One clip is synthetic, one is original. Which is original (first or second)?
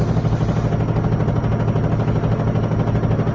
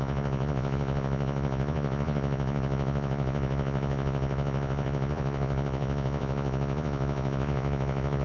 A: first